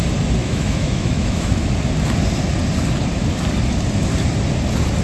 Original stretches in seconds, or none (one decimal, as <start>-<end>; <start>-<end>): 0.0-0.4; 1.7-5.0